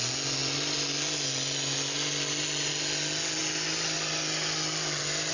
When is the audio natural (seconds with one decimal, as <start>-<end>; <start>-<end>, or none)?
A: 0.0-5.3